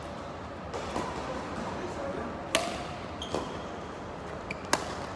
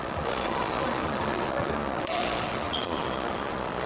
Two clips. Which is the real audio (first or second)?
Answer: first